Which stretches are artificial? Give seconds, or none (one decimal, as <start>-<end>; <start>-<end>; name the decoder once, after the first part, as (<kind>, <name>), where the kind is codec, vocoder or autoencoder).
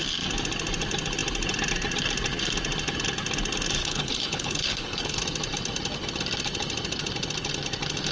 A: 3.8-5.2 (codec, HILCodec)